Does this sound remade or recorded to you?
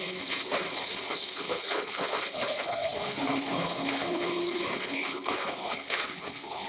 remade